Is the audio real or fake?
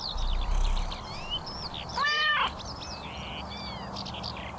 real